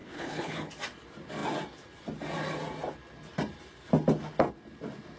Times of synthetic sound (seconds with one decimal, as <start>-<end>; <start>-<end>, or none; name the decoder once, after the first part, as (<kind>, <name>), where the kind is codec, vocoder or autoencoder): 0.0-0.7 (codec, HILCodec)